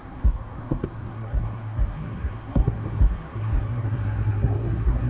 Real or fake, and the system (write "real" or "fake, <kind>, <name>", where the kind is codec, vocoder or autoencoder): fake, codec, SNAC